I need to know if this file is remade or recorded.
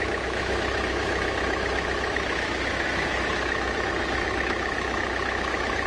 remade